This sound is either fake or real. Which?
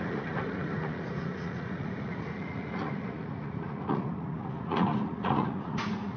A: fake